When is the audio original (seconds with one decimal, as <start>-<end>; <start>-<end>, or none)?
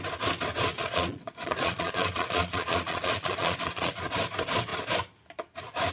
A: 0.0-0.7; 3.9-5.9